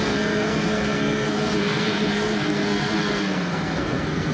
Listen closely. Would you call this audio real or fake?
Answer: fake